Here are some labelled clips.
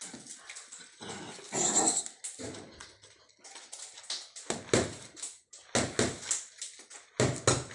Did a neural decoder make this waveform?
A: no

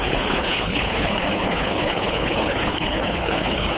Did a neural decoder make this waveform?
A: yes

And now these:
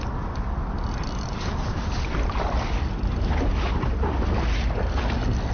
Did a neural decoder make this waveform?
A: no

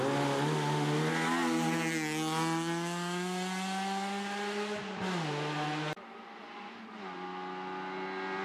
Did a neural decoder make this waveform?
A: no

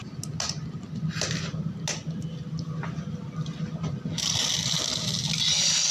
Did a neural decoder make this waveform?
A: no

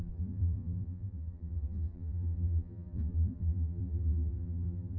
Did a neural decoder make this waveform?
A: yes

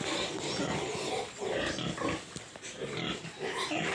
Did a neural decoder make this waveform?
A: no